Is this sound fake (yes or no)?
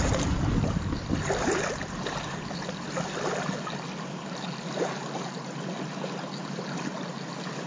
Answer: no